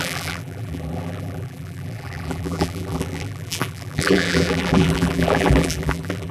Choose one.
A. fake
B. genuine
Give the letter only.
A